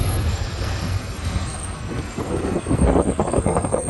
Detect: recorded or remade remade